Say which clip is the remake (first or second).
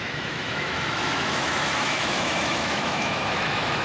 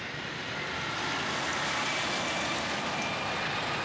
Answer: first